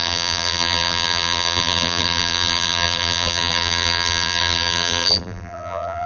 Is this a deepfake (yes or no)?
yes